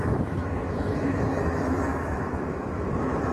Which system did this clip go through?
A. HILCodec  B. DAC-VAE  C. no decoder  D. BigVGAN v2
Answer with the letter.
B